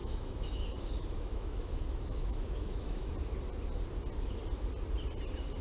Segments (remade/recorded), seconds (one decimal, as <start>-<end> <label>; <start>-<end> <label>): 0.0-3.1 remade; 3.1-5.6 recorded